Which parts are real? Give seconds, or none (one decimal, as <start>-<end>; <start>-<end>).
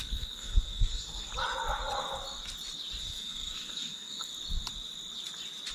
1.3-3.0; 4.3-5.7